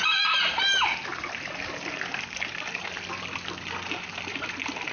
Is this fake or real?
real